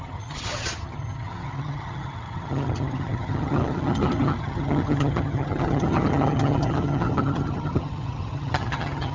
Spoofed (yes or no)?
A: yes